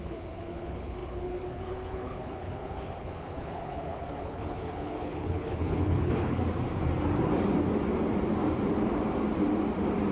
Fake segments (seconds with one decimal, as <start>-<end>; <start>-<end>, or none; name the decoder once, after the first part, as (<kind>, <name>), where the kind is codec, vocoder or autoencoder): 0.0-6.4 (codec, HILCodec)